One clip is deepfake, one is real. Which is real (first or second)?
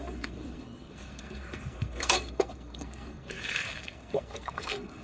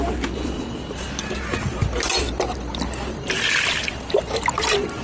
second